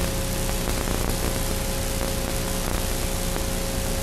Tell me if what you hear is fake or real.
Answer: real